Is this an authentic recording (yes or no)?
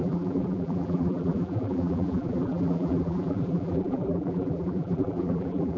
no